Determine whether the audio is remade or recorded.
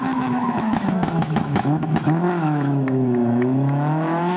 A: remade